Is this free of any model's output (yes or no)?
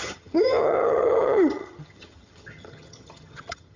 no